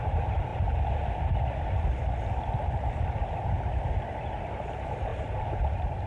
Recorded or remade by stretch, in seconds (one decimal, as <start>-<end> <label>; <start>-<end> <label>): 0.0-0.5 remade; 0.5-4.2 recorded; 4.2-6.1 remade